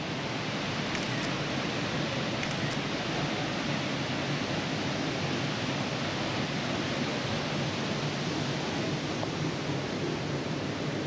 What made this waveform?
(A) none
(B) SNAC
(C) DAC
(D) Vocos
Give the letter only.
A